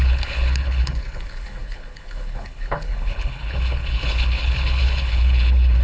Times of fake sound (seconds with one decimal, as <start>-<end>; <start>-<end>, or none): 0.0-5.8